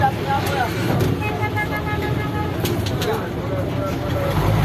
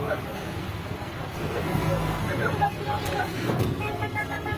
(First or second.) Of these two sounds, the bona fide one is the first